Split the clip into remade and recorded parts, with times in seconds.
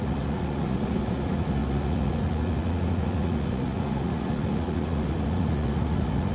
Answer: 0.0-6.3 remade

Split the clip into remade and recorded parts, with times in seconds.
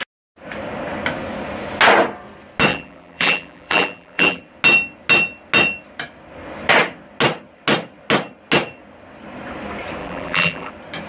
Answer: 0.0-2.7 recorded; 2.7-4.4 remade; 4.4-10.0 recorded; 10.0-10.7 remade; 10.7-11.1 recorded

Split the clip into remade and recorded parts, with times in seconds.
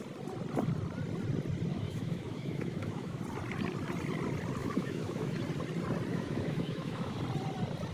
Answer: 0.0-1.7 recorded; 1.7-3.2 remade; 3.2-4.6 recorded; 4.6-5.4 remade; 5.4-6.1 recorded; 6.1-7.2 remade; 7.2-7.9 recorded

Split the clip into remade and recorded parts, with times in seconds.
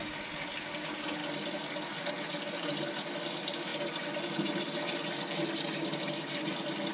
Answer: 0.0-6.9 recorded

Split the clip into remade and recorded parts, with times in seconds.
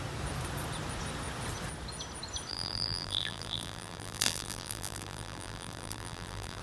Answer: 0.0-2.5 recorded; 2.5-6.6 remade